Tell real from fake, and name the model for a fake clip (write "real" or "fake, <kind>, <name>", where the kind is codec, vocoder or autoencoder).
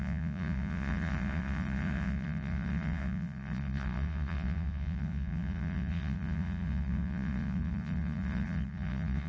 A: fake, vocoder, Vocos